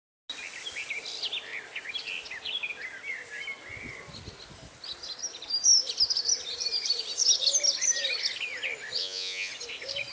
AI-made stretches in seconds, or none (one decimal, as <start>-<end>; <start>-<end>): 9.0-9.5